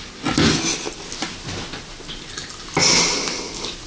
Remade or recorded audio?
recorded